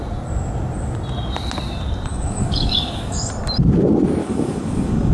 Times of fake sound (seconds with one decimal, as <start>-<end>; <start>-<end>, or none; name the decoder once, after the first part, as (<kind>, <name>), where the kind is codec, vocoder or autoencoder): 2.1-3.3 (codec, DAC); 4.2-5.1